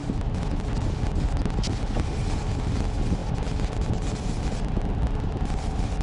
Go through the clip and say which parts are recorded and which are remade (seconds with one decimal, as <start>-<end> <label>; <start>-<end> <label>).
0.0-6.0 recorded